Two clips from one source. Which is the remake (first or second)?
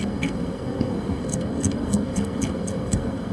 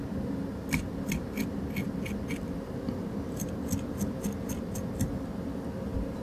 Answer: first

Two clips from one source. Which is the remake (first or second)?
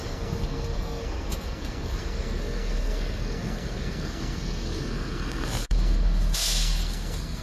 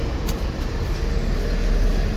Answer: first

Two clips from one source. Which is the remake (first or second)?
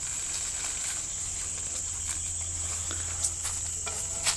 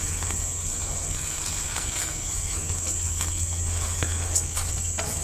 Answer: second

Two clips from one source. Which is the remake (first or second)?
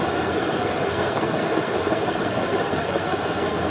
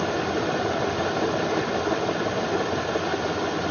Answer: first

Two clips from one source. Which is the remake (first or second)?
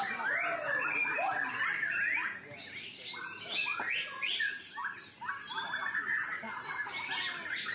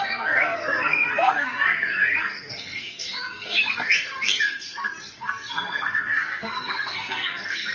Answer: second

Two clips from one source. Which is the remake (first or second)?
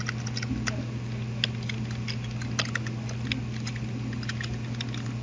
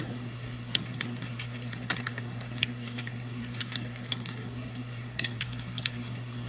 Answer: second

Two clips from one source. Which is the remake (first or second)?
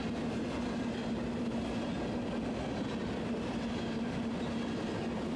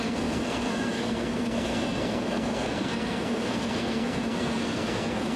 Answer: second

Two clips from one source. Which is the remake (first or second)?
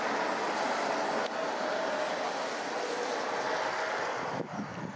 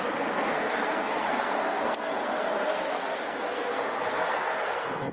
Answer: second